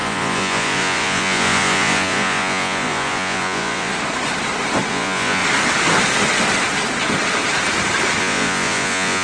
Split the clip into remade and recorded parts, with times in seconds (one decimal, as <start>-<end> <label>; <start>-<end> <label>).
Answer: 0.0-3.9 remade; 3.9-4.9 recorded; 4.9-5.4 remade; 5.4-8.2 recorded; 8.2-9.2 remade